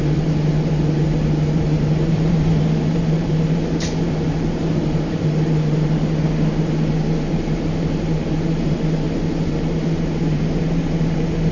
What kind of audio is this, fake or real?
fake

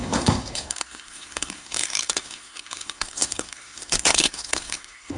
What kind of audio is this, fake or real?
fake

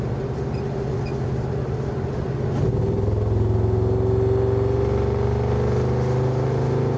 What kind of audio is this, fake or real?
real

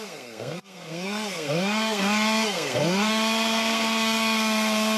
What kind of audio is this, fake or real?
fake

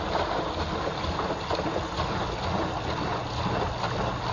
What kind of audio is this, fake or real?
real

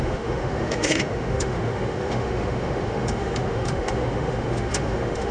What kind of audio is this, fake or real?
fake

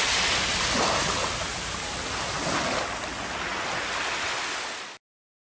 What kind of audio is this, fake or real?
real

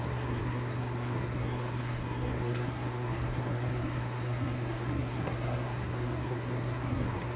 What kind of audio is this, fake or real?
fake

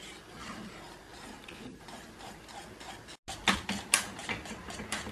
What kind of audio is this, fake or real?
real